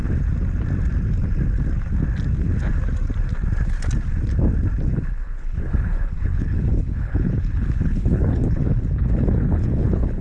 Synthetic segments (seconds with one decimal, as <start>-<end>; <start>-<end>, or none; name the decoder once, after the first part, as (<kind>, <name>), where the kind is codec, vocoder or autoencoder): 4.9-10.2 (codec, HILCodec)